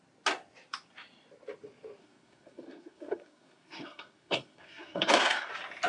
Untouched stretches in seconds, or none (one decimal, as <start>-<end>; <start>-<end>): 0.0-2.0; 5.5-5.9